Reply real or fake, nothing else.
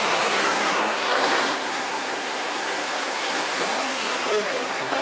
fake